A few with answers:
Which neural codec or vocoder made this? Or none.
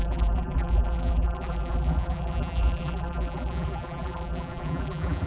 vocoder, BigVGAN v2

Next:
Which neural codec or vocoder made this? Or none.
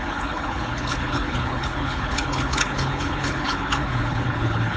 codec, HILCodec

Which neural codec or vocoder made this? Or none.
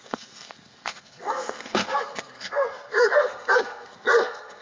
codec, SNAC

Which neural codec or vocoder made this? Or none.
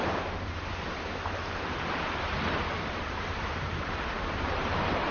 vocoder, BigVGAN v2